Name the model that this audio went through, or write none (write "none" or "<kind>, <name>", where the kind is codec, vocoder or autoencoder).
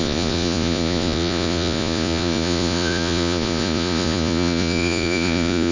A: vocoder, Vocos